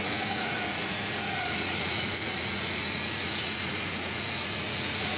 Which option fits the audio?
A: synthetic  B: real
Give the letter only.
A